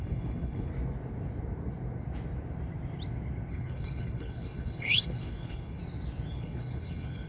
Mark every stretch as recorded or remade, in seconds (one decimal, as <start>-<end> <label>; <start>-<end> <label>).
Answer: 0.0-0.7 remade; 0.7-3.5 recorded; 3.5-5.8 remade; 5.8-6.3 recorded; 6.3-7.3 remade